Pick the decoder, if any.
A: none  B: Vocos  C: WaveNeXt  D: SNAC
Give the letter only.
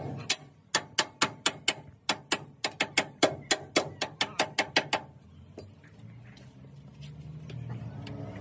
A